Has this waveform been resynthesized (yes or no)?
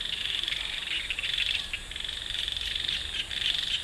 no